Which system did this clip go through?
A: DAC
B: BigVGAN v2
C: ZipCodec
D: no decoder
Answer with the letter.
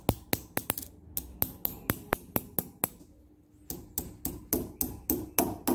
D